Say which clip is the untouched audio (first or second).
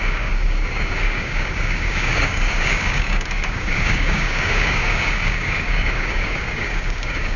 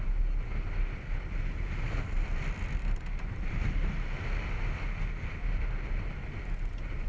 second